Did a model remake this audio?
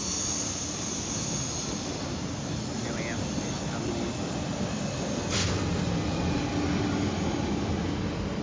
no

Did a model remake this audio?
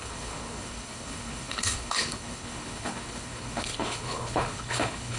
yes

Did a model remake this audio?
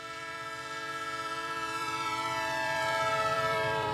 yes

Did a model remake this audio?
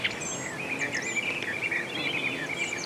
no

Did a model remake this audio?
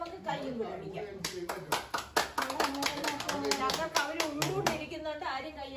no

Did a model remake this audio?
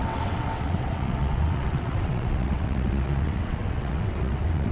yes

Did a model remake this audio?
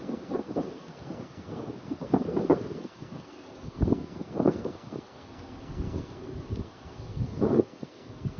yes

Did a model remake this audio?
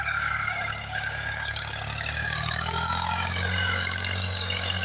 yes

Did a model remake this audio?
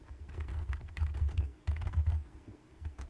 yes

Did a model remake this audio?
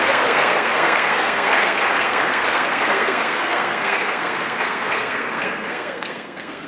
yes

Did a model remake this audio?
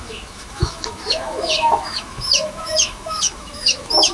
yes